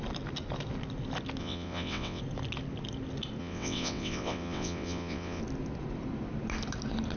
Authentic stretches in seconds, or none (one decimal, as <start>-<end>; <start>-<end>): 0.0-1.4; 2.2-3.4; 5.4-7.2